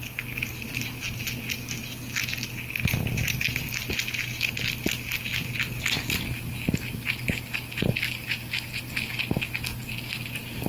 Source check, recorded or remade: recorded